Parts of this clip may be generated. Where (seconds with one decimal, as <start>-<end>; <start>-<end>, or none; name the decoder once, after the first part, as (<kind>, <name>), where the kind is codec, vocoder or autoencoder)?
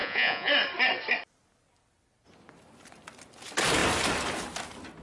0.0-0.5 (vocoder, Vocos)